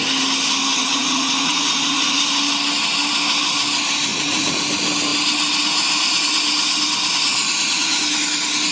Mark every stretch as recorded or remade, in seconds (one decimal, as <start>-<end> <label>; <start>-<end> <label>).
0.0-0.7 recorded; 0.7-2.3 remade; 2.3-4.1 recorded; 4.1-4.6 remade; 4.6-7.3 recorded; 7.3-8.0 remade; 8.0-8.7 recorded